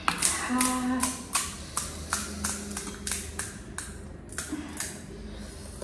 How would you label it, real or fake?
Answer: real